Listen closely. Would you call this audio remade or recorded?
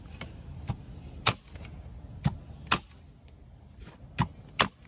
recorded